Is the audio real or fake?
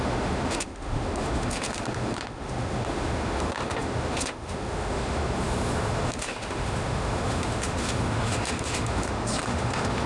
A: fake